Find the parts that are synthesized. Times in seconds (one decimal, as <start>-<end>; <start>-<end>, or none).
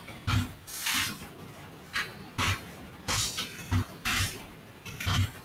0.8-1.3; 2.1-5.4